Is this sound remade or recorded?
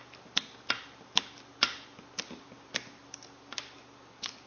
recorded